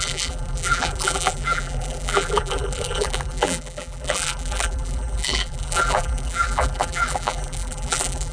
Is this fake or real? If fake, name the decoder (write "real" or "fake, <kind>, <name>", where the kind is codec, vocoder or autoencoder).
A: fake, vocoder, BigVGAN v2